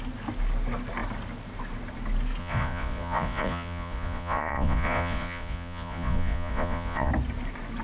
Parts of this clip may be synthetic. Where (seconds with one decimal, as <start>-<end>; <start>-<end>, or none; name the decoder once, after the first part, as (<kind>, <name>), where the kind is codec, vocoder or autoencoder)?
2.4-7.1 (vocoder, Vocos)